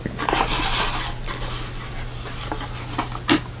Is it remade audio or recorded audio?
recorded